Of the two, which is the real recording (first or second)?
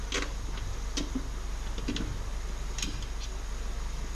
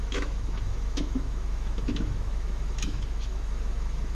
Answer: first